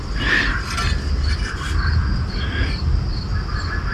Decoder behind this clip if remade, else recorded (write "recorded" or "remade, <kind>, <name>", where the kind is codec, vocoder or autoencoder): recorded